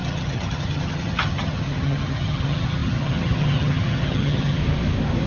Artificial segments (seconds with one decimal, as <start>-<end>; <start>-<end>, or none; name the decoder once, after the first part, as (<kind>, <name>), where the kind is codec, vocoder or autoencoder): 0.0-4.6 (vocoder, HiFi-GAN)